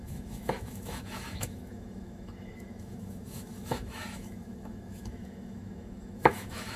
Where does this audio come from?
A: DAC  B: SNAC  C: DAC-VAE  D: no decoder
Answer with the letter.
C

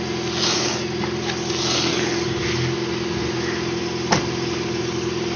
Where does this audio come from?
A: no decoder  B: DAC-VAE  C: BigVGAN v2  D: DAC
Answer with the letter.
A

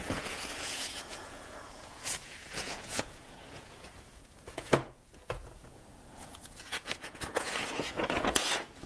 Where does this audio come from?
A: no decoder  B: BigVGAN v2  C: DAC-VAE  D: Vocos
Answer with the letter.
D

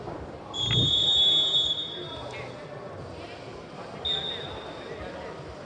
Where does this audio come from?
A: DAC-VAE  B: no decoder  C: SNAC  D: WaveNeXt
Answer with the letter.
B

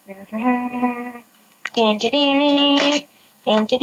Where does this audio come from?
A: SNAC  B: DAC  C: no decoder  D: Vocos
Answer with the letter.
A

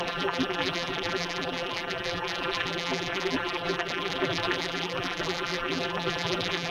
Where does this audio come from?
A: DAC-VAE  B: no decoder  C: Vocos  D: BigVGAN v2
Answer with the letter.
D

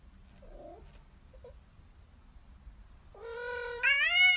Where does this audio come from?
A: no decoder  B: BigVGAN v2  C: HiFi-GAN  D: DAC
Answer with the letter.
A